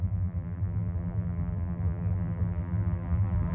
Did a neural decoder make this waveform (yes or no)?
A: yes